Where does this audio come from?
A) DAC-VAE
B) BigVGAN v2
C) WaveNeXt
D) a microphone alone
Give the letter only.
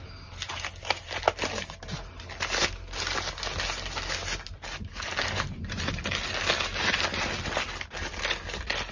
D